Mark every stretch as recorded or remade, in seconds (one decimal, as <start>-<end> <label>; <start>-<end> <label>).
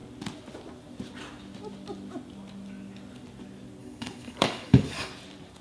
0.0-3.8 recorded; 3.8-5.1 remade; 5.1-5.6 recorded